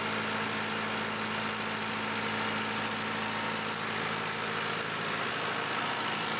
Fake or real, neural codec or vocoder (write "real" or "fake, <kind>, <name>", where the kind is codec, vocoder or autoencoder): real